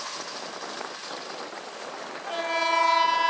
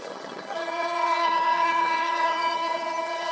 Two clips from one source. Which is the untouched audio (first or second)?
first